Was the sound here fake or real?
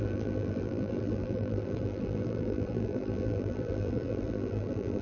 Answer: fake